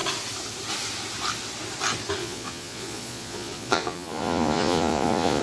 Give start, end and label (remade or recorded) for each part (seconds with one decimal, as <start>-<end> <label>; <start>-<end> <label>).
0.0-2.2 recorded; 2.2-5.4 remade